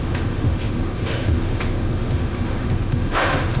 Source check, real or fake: fake